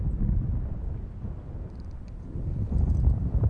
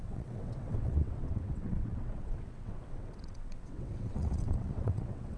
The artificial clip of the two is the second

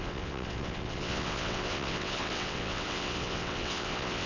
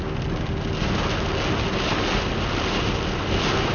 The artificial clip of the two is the first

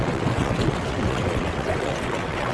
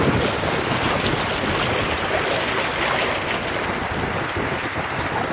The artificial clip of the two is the first